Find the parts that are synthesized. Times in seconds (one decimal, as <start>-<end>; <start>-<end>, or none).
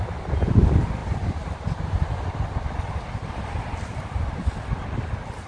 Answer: 1.0-4.3